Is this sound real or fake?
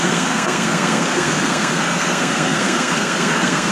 fake